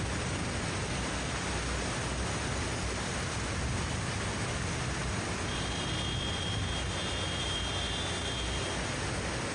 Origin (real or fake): real